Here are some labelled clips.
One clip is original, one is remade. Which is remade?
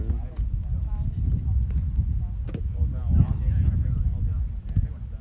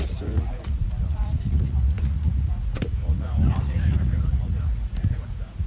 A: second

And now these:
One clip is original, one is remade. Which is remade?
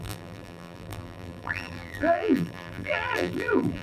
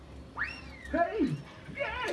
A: first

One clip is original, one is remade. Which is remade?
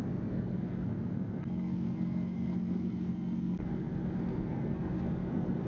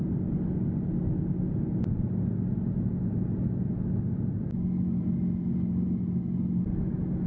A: first